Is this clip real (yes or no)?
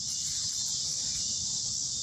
yes